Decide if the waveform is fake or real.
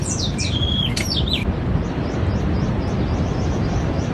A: fake